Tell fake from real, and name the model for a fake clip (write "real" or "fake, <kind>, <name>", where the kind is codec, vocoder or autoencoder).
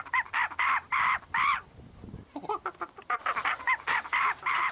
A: fake, vocoder, BigVGAN v2